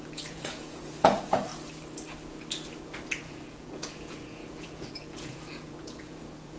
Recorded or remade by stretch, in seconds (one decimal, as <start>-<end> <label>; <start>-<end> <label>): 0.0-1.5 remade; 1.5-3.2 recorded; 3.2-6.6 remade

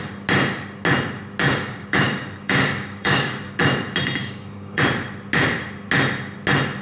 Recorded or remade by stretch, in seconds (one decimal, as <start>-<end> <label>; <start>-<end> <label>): 0.0-1.4 recorded; 1.4-3.6 remade; 3.6-4.2 recorded; 4.2-4.8 remade; 4.8-6.8 recorded

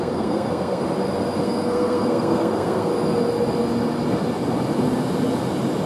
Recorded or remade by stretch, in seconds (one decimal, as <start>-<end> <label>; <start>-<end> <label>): 0.0-0.8 remade; 0.8-1.4 recorded; 1.4-2.9 remade; 2.9-5.9 recorded